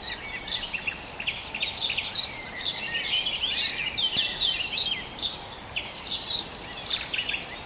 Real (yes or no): yes